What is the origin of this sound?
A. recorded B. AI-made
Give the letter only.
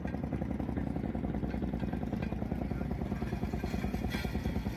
A